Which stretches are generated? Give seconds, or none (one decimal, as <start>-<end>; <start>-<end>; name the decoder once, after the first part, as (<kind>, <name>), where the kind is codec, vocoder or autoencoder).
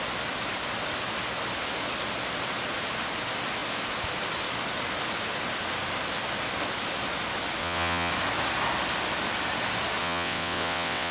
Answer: 7.6-8.1 (vocoder, WaveNeXt); 10.0-11.1